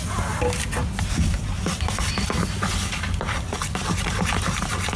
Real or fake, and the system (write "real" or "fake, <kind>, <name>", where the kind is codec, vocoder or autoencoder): real